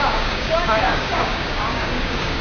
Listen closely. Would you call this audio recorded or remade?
remade